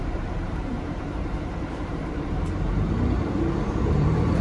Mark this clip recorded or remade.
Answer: remade